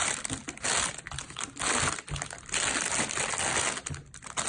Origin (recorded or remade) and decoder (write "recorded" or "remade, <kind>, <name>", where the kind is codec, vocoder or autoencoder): recorded